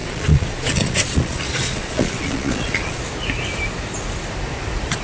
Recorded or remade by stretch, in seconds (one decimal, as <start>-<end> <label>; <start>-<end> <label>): 0.0-3.0 remade; 3.0-5.0 recorded